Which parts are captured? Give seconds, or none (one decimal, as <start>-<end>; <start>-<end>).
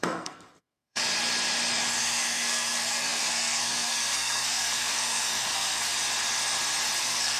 1.0-2.0; 5.9-7.0